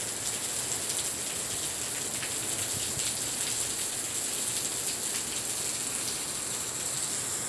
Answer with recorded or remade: recorded